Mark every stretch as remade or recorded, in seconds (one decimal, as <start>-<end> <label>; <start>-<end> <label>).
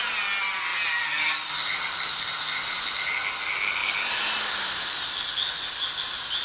0.0-6.4 recorded